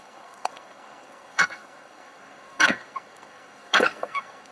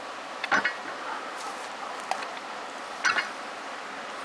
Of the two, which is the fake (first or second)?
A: first